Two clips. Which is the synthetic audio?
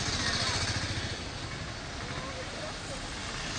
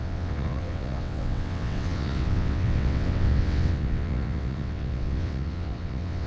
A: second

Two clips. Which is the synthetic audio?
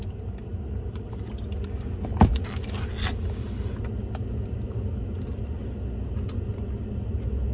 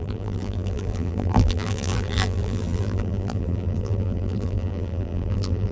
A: second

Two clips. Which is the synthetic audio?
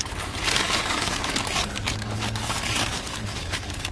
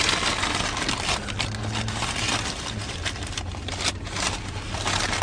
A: first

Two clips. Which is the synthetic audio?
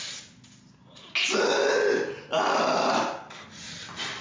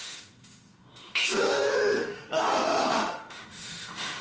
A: second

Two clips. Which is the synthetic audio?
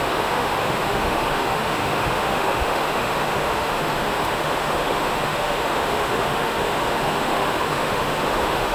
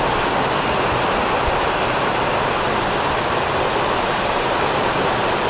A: first